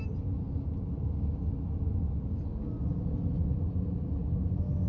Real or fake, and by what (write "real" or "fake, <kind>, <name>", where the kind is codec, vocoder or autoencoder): real